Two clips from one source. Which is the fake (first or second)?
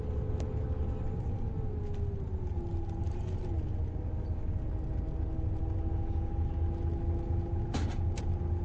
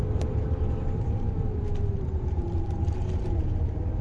second